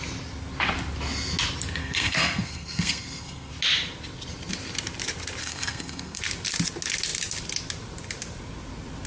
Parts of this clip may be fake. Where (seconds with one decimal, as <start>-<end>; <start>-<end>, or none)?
1.8-3.5; 5.4-6.2